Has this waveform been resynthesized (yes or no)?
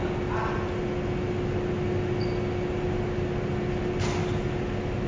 no